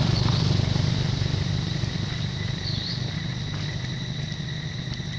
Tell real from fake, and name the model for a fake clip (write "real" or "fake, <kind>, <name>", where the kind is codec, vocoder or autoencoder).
real